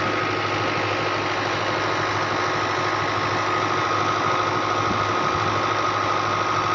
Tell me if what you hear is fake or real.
real